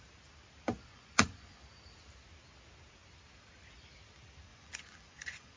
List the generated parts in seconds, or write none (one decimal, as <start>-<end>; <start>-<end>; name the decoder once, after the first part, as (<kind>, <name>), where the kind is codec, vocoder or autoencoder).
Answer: 0.9-1.6 (vocoder, Vocos); 4.5-5.6